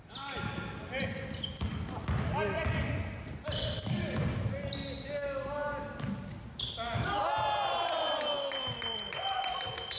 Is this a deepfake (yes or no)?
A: no